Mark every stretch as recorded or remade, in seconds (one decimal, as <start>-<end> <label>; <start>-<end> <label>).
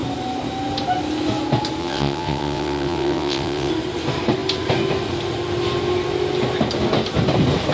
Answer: 0.0-1.8 recorded; 1.8-3.7 remade; 3.7-7.7 recorded